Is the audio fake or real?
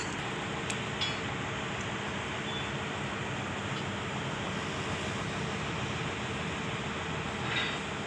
real